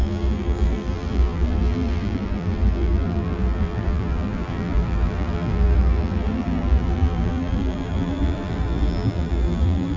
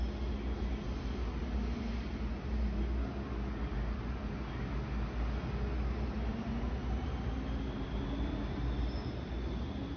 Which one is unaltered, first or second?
second